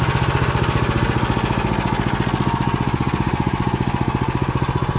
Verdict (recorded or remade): recorded